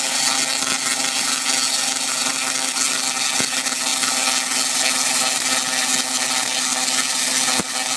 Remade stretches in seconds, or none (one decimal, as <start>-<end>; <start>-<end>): none

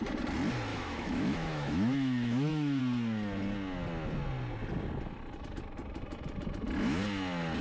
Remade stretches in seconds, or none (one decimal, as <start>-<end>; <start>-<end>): 0.7-2.8

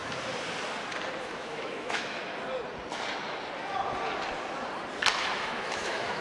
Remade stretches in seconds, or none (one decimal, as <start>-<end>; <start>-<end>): 1.2-2.2; 5.2-6.2

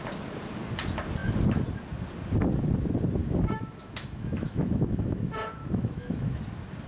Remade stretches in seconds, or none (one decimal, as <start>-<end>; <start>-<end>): 3.2-6.4

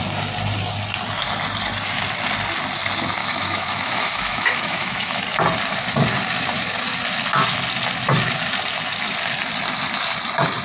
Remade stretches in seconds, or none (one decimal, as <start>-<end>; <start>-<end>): 3.2-5.2

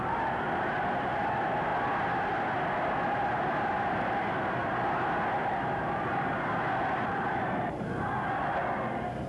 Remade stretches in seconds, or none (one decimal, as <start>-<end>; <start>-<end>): none